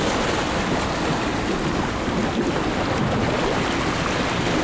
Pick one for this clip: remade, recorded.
recorded